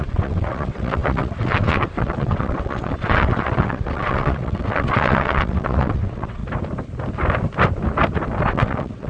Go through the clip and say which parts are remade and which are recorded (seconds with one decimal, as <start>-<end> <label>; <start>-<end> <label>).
0.0-6.4 remade; 6.4-8.5 recorded; 8.5-9.1 remade